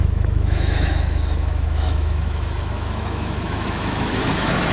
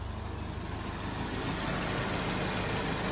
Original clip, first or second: second